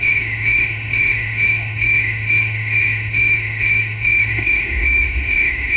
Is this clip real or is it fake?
fake